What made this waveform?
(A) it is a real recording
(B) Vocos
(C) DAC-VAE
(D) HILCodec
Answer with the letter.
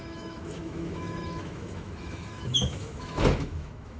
C